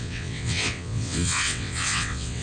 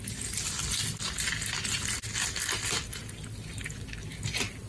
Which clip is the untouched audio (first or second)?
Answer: second